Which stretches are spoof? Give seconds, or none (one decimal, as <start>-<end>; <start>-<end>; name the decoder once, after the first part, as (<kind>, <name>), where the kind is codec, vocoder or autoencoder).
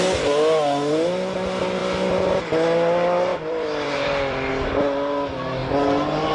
1.8-2.4 (vocoder, BigVGAN v2); 3.3-4.5